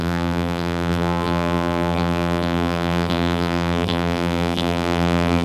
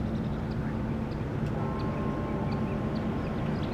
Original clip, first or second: second